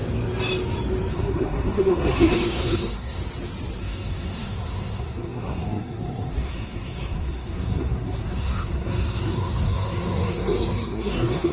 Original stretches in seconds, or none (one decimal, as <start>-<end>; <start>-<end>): 0.0-1.1; 3.2-3.8